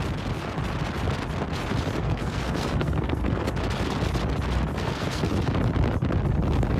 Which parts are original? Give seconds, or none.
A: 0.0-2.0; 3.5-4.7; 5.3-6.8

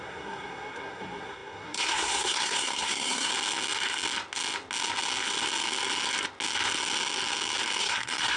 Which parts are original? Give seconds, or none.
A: 3.3-7.8

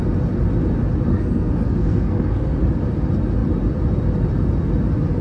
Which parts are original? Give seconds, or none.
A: 0.0-1.1; 2.7-5.2

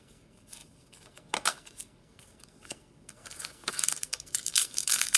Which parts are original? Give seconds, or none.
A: none

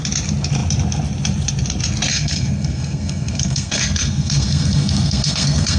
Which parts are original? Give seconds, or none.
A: 0.0-2.1